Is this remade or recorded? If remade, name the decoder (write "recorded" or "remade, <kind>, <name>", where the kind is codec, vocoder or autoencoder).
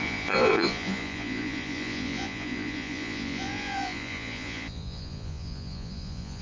remade, vocoder, Vocos